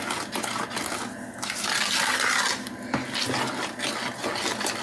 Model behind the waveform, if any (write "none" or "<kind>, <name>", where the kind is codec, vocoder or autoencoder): none